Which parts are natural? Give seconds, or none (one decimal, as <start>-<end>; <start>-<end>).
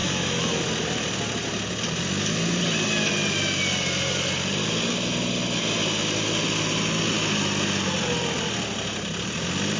0.6-9.8